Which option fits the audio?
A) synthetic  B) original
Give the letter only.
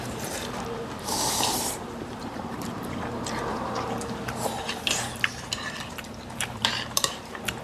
A